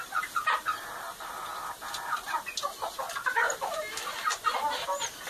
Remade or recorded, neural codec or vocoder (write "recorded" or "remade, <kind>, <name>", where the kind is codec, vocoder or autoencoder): recorded